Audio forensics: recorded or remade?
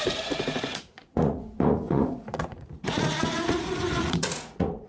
remade